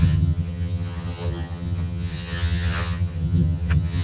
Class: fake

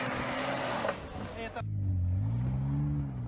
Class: real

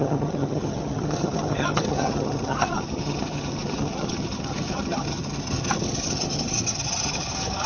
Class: fake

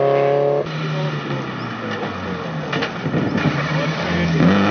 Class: real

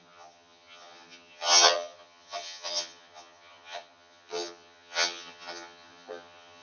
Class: fake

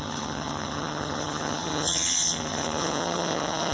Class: fake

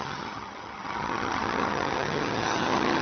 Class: fake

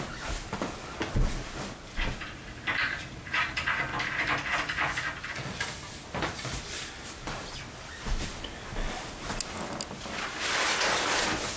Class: real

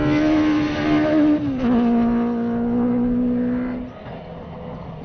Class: real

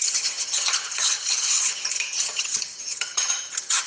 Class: fake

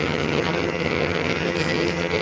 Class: fake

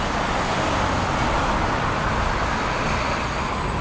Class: real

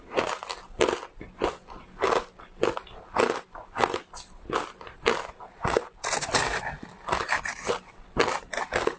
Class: real